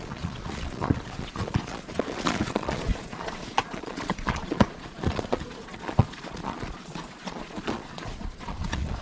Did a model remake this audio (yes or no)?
yes